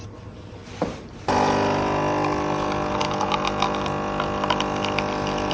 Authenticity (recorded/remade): recorded